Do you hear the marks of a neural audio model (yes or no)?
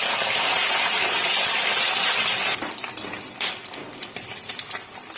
no